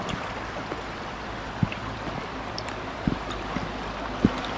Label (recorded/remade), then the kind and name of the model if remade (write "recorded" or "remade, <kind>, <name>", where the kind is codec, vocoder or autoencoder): remade, vocoder, BigVGAN v2